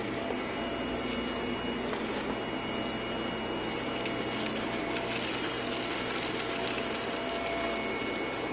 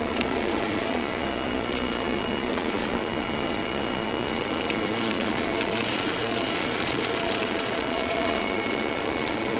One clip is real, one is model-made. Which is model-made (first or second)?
second